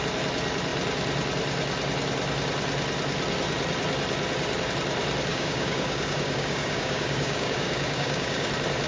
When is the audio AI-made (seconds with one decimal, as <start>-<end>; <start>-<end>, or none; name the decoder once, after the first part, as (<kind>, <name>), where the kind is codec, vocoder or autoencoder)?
5.3-8.5 (codec, DAC)